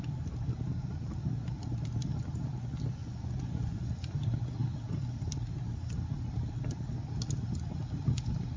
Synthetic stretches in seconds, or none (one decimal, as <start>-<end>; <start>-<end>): 3.0-3.9